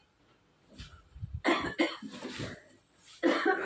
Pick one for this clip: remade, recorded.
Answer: recorded